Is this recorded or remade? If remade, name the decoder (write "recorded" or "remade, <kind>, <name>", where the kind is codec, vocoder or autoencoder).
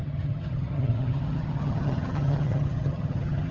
remade, vocoder, HiFi-GAN